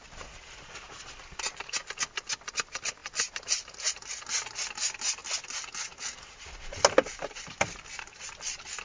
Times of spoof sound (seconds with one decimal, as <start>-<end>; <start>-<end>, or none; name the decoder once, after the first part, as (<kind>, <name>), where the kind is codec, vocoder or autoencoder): none